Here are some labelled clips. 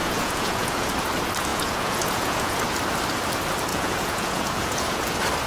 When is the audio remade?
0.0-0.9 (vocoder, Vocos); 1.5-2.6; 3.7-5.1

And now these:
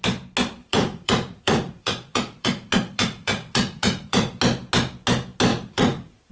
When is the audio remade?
0.6-4.4 (vocoder, Vocos); 5.5-6.3